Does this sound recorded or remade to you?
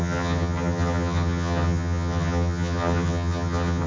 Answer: remade